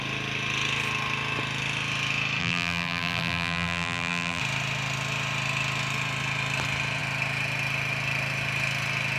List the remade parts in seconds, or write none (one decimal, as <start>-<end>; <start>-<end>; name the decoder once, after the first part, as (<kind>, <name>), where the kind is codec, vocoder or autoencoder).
2.4-4.4 (vocoder, BigVGAN v2)